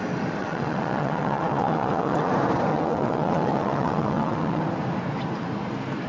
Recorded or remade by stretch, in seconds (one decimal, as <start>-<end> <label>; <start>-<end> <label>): 0.0-0.4 recorded; 0.4-2.3 remade; 2.3-2.7 recorded; 2.7-4.6 remade; 4.6-6.1 recorded